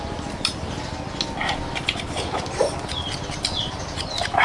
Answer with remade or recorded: remade